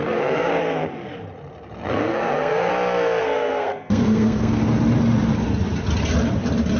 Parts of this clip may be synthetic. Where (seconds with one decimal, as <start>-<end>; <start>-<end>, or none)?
0.0-0.8; 1.9-2.7; 3.2-4.6